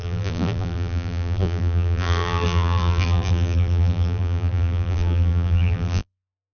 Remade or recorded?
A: remade